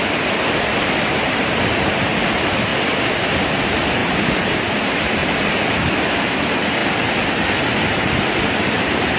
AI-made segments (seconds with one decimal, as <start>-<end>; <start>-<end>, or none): 0.0-2.7; 3.3-5.2; 6.0-6.8; 8.6-9.2